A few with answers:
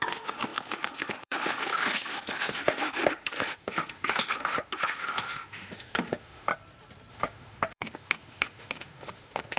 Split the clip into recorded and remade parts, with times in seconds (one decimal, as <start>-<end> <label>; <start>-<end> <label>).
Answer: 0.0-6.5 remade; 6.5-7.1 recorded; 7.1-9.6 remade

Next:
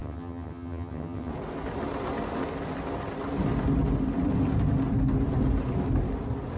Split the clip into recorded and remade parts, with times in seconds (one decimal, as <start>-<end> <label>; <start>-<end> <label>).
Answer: 0.0-1.3 remade; 1.3-6.6 recorded

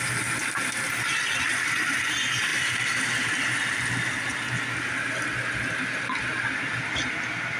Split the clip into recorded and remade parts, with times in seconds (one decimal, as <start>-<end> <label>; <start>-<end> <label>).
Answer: 0.0-7.6 recorded

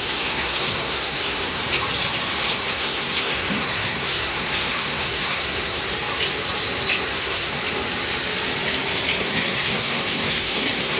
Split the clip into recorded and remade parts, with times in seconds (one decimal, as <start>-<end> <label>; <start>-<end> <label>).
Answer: 0.0-1.6 remade; 1.6-2.5 recorded; 2.5-5.8 remade; 5.8-7.1 recorded; 7.1-7.6 remade; 7.6-9.2 recorded; 9.2-11.0 remade

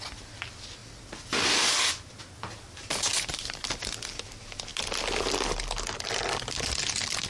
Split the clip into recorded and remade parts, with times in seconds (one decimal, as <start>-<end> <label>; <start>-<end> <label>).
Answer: 0.0-7.3 recorded